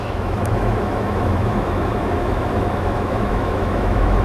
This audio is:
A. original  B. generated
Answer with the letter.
B